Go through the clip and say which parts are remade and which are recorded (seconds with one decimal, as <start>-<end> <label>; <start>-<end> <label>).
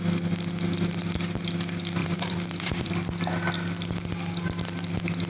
0.0-2.0 recorded; 2.0-2.9 remade; 2.9-5.3 recorded